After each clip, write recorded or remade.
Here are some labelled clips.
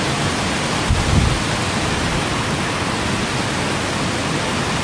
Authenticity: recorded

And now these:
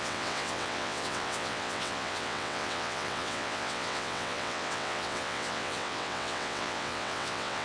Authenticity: remade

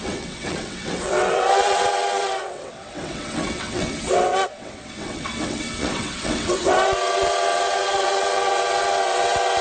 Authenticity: remade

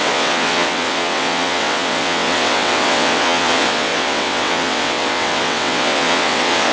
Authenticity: remade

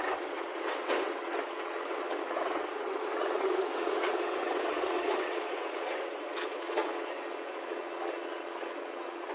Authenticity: remade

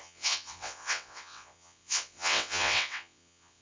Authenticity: remade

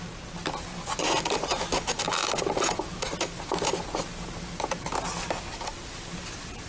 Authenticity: recorded